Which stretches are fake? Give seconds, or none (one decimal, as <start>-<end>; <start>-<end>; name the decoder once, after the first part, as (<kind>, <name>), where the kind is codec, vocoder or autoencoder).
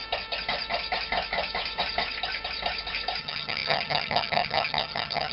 3.2-5.3 (vocoder, HiFi-GAN)